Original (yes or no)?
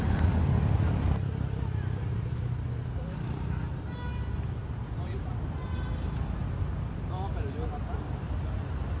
yes